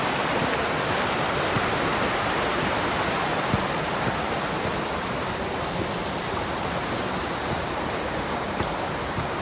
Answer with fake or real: real